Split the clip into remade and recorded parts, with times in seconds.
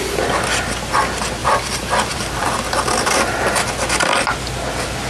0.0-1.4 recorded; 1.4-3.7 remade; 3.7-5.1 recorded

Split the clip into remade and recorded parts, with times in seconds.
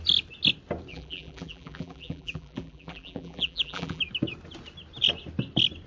0.0-0.9 recorded; 0.9-4.0 remade; 4.0-5.9 recorded